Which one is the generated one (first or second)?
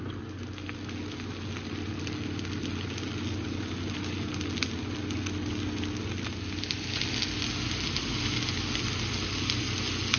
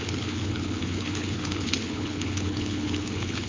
second